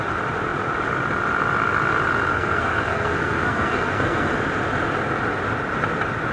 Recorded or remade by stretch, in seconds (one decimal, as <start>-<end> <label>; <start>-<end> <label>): 0.0-2.3 recorded; 2.3-4.3 remade; 4.3-6.3 recorded